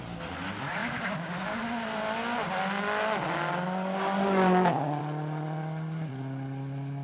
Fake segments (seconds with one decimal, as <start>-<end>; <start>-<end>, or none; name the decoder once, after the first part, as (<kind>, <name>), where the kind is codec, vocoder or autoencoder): none